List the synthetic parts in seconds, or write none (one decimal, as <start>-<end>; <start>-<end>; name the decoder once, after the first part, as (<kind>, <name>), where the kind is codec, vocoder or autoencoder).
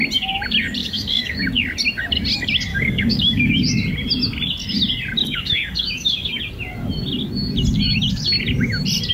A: 0.8-1.4 (codec, DAC); 2.7-3.6; 5.2-6.4